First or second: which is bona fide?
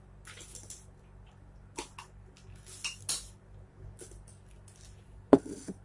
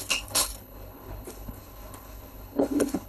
first